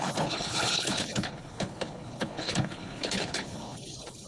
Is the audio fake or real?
fake